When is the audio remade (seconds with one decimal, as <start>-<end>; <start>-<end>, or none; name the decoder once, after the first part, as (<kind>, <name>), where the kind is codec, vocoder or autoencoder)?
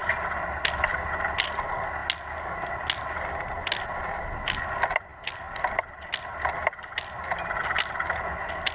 none